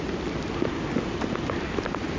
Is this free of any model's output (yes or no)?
yes